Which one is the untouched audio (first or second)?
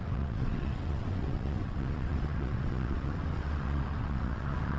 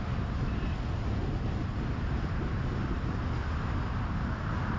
second